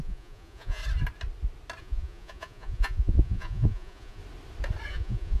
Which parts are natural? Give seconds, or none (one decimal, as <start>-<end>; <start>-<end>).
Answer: 0.8-1.8; 4.2-4.9